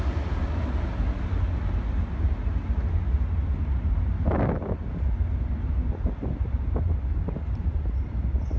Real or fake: real